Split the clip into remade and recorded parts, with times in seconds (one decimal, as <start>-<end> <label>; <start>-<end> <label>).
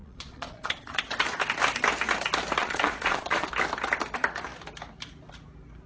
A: 0.0-1.4 remade; 1.4-2.6 recorded; 2.6-3.5 remade; 3.5-5.9 recorded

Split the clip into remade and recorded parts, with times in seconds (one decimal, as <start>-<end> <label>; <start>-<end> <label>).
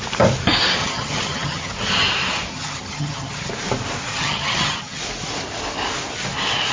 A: 0.0-0.8 recorded; 0.8-1.7 remade; 1.7-2.5 recorded; 2.5-3.5 remade; 3.5-4.1 recorded; 4.1-5.0 remade; 5.0-6.7 recorded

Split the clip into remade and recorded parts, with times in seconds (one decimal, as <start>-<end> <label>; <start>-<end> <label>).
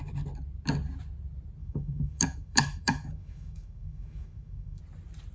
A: 0.0-1.6 recorded; 1.6-4.8 remade; 4.8-5.3 recorded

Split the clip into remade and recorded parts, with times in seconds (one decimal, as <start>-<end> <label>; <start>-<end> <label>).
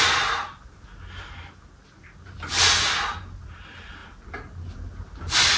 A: 0.0-5.6 recorded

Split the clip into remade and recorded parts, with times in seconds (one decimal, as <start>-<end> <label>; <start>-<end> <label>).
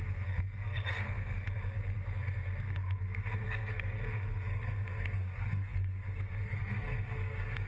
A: 0.0-7.7 remade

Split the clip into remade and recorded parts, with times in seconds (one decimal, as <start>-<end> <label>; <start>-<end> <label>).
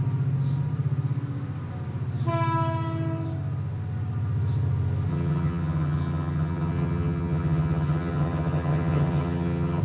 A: 0.0-5.1 recorded; 5.1-9.8 remade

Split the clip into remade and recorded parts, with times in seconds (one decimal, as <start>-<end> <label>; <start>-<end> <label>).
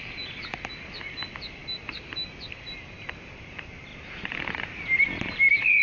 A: 0.0-1.6 recorded; 1.6-2.1 remade; 2.1-3.9 recorded; 3.9-5.8 remade